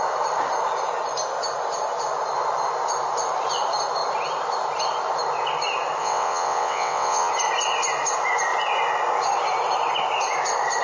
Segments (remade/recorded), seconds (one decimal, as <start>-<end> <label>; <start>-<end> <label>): 0.0-6.0 recorded; 6.0-7.3 remade; 7.3-10.8 recorded